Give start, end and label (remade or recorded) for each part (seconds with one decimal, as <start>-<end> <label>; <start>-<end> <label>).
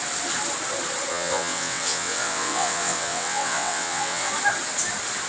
0.0-1.1 recorded; 1.1-4.3 remade; 4.3-5.3 recorded